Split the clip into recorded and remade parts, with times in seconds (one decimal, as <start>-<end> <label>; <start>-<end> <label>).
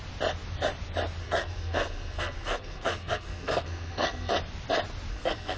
0.0-1.2 recorded; 1.2-4.3 remade; 4.3-5.1 recorded; 5.1-5.6 remade